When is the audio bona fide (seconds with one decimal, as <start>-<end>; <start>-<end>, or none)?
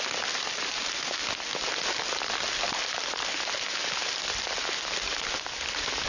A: 0.0-6.1